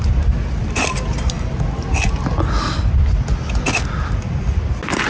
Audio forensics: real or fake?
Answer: real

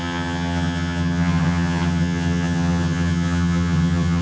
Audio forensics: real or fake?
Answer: fake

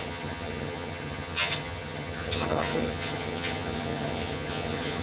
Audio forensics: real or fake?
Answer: fake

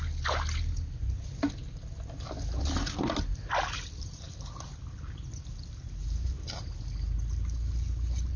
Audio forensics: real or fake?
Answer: real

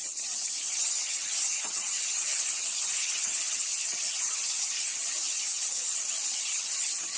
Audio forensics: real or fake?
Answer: fake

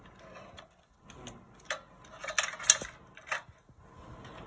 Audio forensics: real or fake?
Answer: real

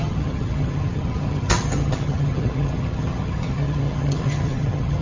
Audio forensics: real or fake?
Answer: fake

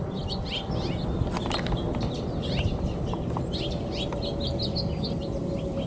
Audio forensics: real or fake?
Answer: real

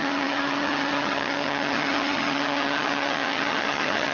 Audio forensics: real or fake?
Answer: fake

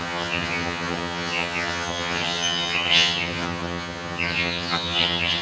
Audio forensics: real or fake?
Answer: fake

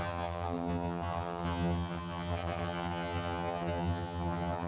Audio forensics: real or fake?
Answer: fake